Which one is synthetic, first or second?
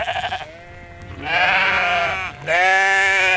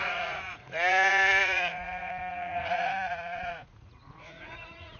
second